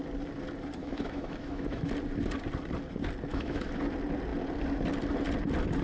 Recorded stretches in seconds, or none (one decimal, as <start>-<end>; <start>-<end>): 0.0-0.8; 1.9-3.3; 3.8-5.8